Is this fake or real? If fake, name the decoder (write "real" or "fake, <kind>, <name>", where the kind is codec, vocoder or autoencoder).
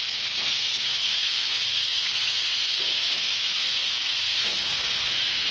fake, codec, SNAC